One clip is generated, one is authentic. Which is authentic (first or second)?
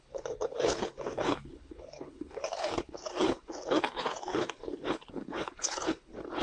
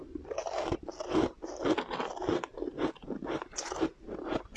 second